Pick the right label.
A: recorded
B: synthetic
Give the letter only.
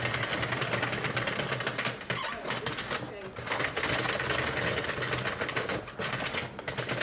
A